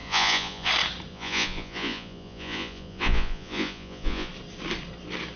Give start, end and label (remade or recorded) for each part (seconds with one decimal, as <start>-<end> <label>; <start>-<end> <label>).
0.0-0.7 remade; 0.7-1.1 recorded; 1.1-4.3 remade; 4.3-5.4 recorded